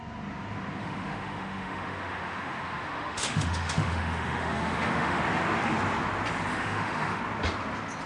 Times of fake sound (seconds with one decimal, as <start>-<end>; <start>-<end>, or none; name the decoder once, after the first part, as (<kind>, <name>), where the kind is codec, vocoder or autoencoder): 0.8-5.2 (autoencoder, DAC-VAE); 6.5-7.2